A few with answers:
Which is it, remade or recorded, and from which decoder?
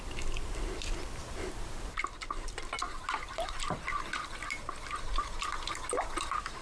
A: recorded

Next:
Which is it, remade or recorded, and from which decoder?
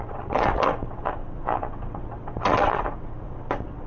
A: remade, vocoder, WaveNeXt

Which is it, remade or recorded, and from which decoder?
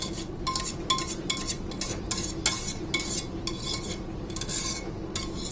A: recorded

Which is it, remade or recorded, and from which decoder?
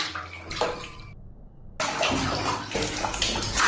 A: recorded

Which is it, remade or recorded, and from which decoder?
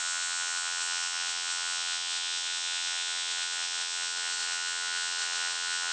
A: remade, vocoder, WaveNeXt